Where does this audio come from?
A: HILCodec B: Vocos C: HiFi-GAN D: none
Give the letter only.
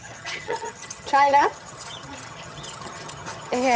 C